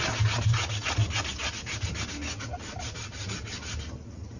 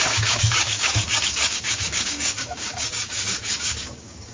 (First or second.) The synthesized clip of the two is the second